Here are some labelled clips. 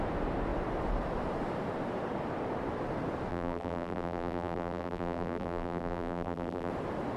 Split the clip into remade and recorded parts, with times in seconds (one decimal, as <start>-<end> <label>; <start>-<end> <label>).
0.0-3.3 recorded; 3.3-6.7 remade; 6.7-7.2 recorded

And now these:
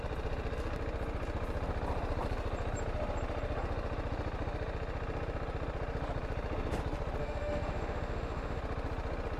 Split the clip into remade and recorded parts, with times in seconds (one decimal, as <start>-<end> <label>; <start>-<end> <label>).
0.0-7.2 recorded; 7.2-8.6 remade; 8.6-9.4 recorded

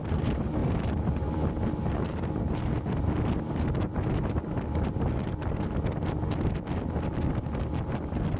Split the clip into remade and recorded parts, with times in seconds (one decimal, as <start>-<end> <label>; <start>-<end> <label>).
0.0-0.6 recorded; 0.6-1.5 remade; 1.5-8.4 recorded

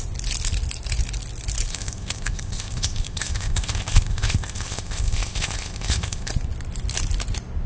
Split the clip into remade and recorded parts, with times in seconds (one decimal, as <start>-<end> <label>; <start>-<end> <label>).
0.0-1.7 recorded; 1.7-6.3 remade; 6.3-7.7 recorded

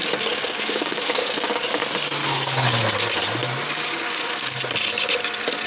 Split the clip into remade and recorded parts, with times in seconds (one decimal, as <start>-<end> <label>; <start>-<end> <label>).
0.0-1.8 remade; 1.8-2.2 recorded; 2.2-2.8 remade; 2.8-3.7 recorded; 3.7-4.6 remade; 4.6-5.7 recorded

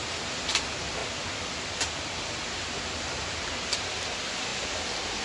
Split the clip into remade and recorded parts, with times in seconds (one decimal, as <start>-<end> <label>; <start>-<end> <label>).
0.0-5.2 recorded

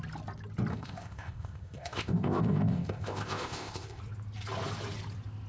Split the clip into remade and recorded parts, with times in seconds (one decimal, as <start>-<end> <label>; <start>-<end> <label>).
0.0-0.7 recorded; 0.7-4.0 remade; 4.0-5.5 recorded

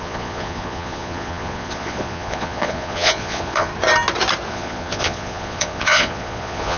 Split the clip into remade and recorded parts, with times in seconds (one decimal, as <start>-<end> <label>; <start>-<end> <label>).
0.0-3.7 remade; 3.7-4.5 recorded; 4.5-6.8 remade